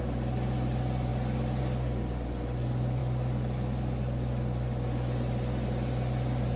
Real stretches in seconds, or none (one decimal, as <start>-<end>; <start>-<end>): 0.0-6.6